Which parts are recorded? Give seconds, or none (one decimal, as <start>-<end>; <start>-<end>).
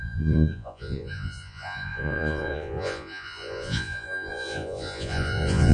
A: none